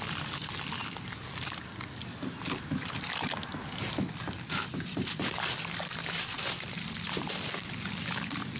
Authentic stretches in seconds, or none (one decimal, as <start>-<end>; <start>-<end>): 0.0-4.9; 7.5-8.6